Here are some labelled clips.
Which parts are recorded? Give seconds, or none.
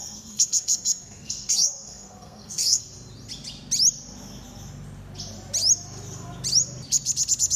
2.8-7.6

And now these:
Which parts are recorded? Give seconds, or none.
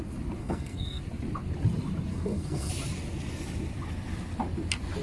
0.0-0.4; 1.0-2.1; 2.7-5.0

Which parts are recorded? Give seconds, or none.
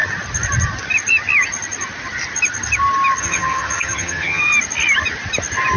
0.0-3.2; 4.4-5.8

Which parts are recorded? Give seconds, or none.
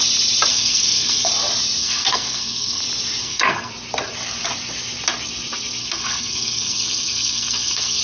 0.0-0.5; 1.3-1.8; 2.8-3.2; 3.7-5.8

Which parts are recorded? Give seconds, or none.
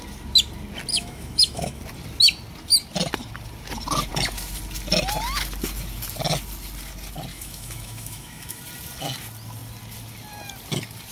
0.0-0.9; 1.8-7.3; 8.6-11.1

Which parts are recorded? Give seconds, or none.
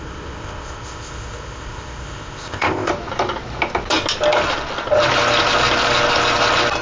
2.9-6.8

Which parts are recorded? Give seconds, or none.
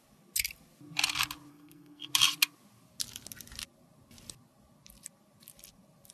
0.0-1.5; 2.1-6.1